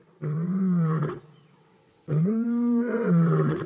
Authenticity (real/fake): fake